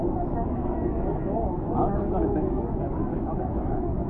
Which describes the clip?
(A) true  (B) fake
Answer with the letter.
B